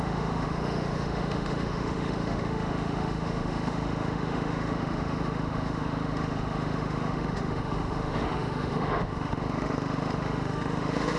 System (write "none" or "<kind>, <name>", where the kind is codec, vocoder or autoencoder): autoencoder, DAC-VAE